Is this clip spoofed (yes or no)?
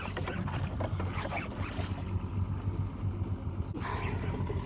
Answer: no